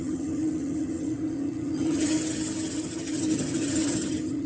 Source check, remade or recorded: remade